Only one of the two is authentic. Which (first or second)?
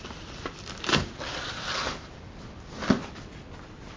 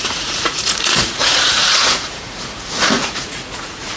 first